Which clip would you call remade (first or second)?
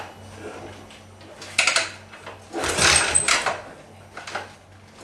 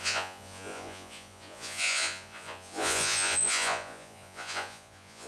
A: second